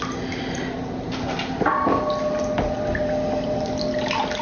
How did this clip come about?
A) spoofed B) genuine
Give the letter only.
B